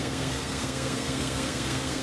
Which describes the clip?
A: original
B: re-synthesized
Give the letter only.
B